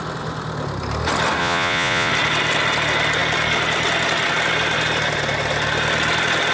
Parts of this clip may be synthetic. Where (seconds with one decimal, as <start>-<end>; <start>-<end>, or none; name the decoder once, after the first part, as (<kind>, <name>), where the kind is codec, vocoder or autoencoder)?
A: 1.4-2.1 (vocoder, Vocos)